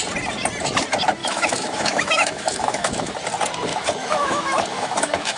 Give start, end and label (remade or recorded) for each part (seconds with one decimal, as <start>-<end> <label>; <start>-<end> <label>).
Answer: 0.0-1.2 recorded; 1.2-3.1 remade; 3.1-3.7 recorded; 3.7-5.4 remade

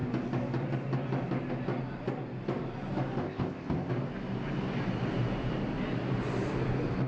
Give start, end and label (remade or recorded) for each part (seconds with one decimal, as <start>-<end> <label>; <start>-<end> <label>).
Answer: 0.0-3.2 recorded; 3.2-3.9 remade; 3.9-7.1 recorded

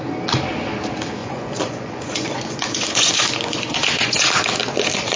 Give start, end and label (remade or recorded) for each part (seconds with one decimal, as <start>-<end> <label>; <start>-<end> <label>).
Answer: 0.0-1.2 recorded; 1.2-4.3 remade; 4.3-5.2 recorded